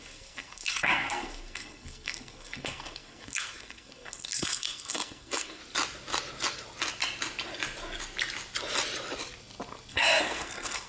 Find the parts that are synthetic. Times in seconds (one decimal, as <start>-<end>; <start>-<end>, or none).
0.0-5.6; 9.9-10.9